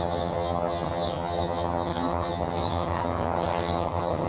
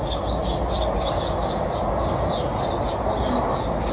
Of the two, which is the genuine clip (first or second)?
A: second